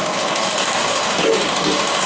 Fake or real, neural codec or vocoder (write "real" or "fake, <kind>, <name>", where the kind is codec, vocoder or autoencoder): fake, codec, DAC